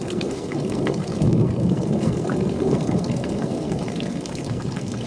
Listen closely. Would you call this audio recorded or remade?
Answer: remade